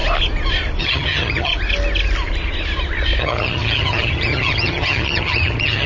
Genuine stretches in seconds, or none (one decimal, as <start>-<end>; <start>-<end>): 0.0-0.8; 1.5-3.2